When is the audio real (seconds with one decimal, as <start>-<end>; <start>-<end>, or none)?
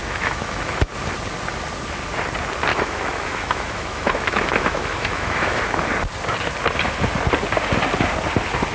0.9-2.7; 5.6-8.7